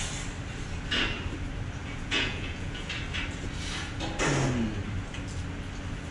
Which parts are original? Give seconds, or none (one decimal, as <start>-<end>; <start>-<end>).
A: 0.0-1.8; 2.9-6.1